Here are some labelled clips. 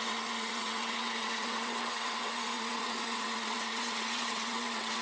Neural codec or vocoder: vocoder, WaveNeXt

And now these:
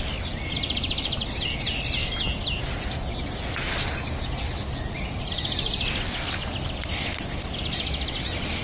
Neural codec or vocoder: none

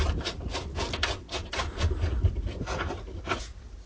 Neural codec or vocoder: none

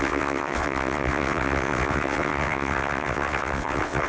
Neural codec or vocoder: vocoder, WaveNeXt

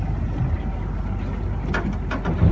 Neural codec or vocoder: none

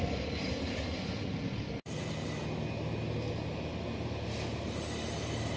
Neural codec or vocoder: none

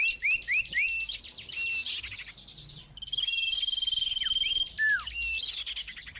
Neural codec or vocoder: none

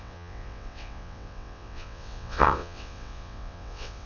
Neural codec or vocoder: vocoder, WaveNeXt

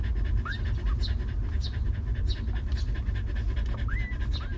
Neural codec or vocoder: none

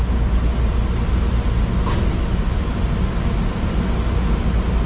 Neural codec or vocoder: none